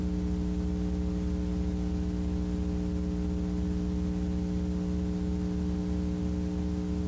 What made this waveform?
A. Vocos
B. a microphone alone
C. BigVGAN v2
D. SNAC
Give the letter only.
B